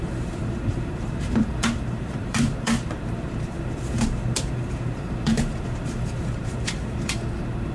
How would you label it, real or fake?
fake